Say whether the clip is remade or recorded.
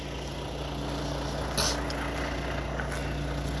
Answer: recorded